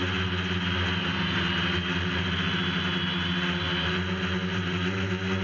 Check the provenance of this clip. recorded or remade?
recorded